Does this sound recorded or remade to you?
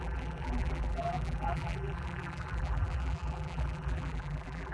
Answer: remade